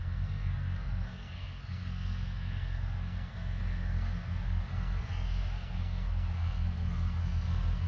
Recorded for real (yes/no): no